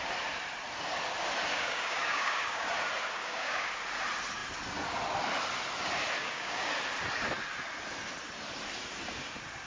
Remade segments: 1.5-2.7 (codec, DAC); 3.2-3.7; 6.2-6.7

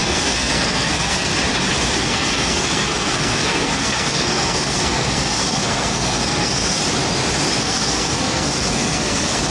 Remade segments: 0.0-1.3 (codec, SNAC); 2.0-6.8; 7.6-9.5

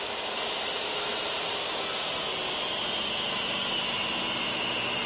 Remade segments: none